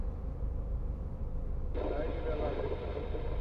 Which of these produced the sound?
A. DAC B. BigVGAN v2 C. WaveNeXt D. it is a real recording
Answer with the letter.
D